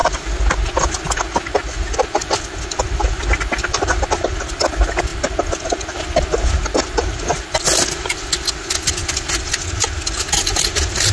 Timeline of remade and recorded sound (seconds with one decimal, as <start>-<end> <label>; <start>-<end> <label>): 0.0-11.1 recorded